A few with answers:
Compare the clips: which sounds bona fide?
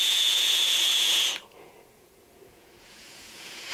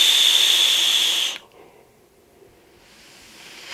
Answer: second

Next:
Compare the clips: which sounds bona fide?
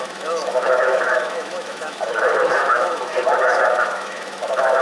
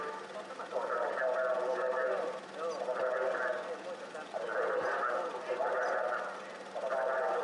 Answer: second